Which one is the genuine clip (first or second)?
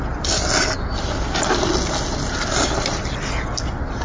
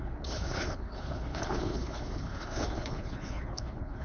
first